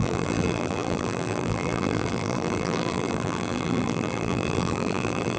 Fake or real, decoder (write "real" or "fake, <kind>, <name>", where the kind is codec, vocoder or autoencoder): fake, vocoder, BigVGAN v2